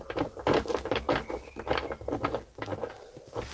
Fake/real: real